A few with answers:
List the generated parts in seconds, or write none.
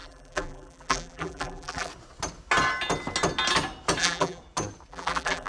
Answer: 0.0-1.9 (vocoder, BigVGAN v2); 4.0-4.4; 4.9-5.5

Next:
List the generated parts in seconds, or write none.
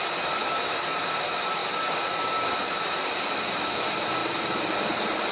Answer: none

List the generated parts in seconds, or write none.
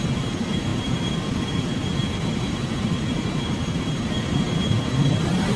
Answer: 0.0-5.6 (vocoder, BigVGAN v2)